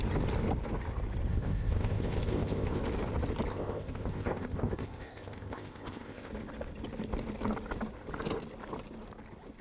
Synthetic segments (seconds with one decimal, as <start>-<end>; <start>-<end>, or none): 1.3-2.8; 3.5-6.3